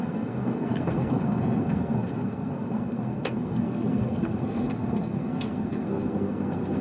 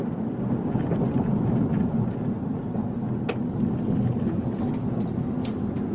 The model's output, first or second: first